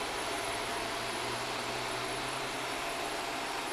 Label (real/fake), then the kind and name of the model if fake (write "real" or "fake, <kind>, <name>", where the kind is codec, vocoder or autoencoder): fake, vocoder, BigVGAN v2